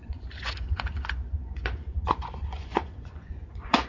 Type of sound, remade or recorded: remade